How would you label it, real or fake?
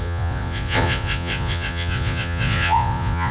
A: fake